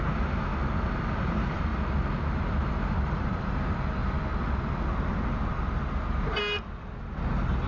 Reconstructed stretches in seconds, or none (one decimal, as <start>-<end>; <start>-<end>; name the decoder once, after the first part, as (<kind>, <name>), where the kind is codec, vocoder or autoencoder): 0.0-0.5 (vocoder, BigVGAN v2); 1.2-1.7; 2.4-4.0